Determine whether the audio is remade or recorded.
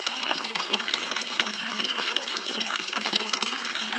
remade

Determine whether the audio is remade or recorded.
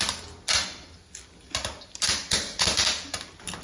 recorded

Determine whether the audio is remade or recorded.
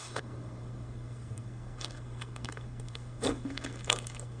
remade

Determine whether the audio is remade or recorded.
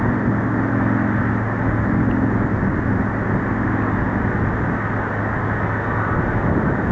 recorded